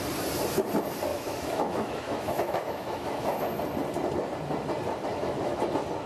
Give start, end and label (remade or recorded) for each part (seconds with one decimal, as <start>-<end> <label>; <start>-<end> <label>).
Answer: 0.0-1.1 recorded; 1.1-3.4 remade; 3.4-5.1 recorded; 5.1-5.6 remade; 5.6-6.1 recorded